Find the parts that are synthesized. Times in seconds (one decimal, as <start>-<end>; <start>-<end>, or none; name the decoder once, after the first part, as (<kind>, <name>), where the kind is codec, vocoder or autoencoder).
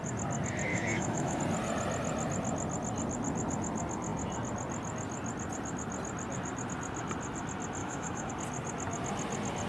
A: 0.7-1.4 (autoencoder, DAC-VAE); 7.8-8.3